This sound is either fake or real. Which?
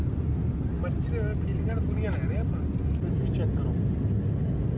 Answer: real